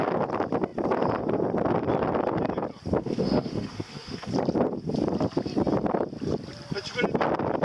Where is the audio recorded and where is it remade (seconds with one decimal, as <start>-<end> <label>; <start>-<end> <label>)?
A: 0.0-3.0 recorded; 3.0-4.3 remade; 4.3-7.6 recorded